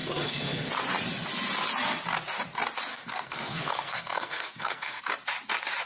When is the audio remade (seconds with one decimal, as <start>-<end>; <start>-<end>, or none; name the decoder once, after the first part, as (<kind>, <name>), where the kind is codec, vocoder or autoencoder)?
0.0-0.7 (codec, SNAC); 2.9-5.0